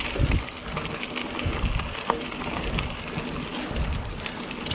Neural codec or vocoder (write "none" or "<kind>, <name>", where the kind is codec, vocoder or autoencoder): none